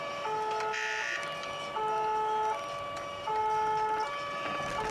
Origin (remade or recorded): recorded